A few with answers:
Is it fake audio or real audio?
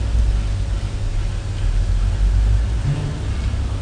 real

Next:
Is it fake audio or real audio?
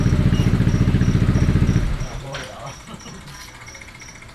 real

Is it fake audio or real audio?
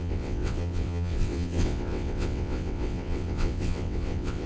fake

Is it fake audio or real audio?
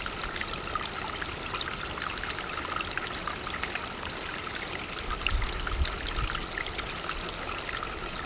real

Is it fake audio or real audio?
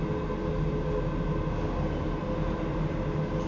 real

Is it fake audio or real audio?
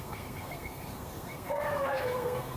fake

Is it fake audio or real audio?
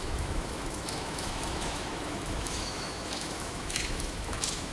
fake